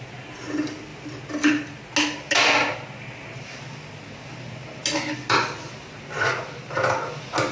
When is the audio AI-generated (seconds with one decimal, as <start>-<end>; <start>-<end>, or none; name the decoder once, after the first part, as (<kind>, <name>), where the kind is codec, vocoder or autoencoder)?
none